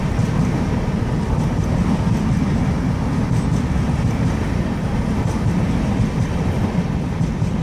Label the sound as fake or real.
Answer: real